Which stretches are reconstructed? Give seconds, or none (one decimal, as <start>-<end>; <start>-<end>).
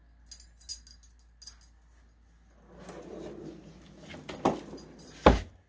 none